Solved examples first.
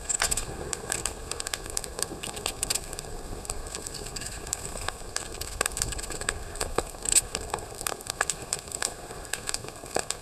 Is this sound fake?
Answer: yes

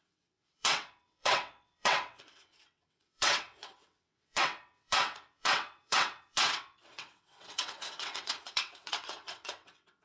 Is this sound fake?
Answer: yes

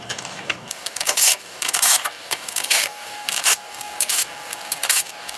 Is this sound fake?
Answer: yes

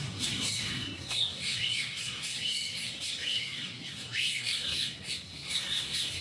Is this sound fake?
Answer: yes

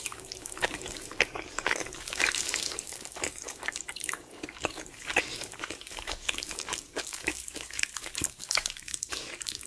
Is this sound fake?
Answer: yes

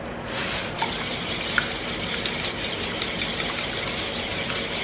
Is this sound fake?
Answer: no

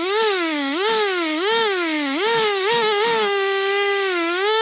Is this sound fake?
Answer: yes